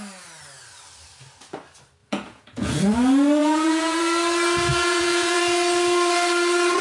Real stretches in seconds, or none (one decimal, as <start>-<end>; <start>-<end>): 0.0-2.0; 2.8-3.4; 4.0-4.7; 5.4-6.8